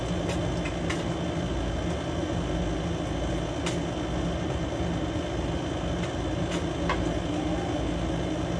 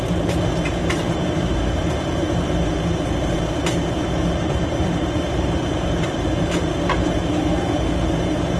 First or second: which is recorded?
first